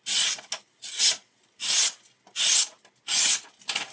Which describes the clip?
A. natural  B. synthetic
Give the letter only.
A